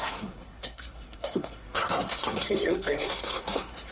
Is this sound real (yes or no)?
no